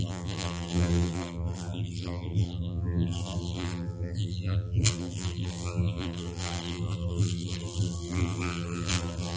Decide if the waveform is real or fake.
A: fake